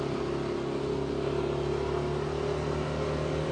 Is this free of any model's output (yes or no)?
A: yes